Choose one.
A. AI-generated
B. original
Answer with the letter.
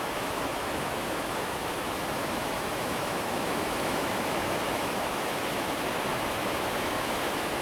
A